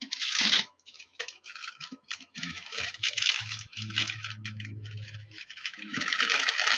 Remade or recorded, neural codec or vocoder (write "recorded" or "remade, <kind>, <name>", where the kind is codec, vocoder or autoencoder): remade, autoencoder, DAC-VAE